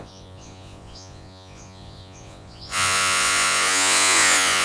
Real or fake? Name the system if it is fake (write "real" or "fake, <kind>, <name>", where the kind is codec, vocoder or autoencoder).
fake, vocoder, Vocos